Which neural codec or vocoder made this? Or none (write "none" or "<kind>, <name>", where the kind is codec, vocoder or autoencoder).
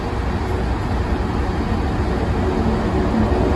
none